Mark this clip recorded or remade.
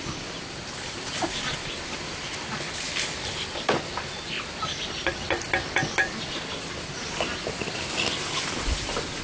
recorded